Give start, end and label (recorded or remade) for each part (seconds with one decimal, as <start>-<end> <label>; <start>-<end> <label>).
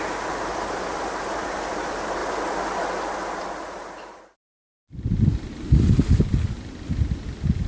0.0-7.7 recorded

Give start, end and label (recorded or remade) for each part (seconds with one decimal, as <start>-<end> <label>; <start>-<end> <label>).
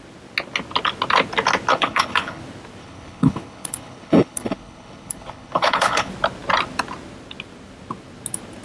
0.0-1.7 recorded; 1.7-2.4 remade; 2.4-2.8 recorded; 2.8-6.1 remade; 6.1-8.6 recorded